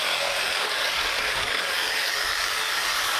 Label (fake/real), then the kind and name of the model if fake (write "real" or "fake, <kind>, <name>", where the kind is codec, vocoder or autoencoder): fake, codec, DAC